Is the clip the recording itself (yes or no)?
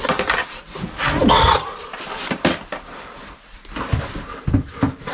yes